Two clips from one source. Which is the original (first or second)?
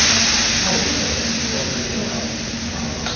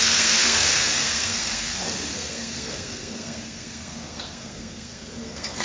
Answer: first